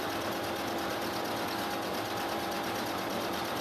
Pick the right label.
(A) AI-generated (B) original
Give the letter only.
B